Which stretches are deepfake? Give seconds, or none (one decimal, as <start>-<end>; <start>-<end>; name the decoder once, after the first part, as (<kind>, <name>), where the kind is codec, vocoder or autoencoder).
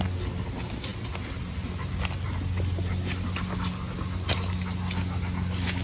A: none